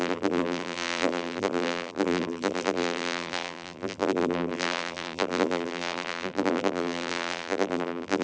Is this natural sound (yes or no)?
no